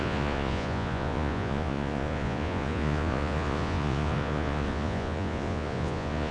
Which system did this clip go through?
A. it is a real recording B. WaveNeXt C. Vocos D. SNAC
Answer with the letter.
C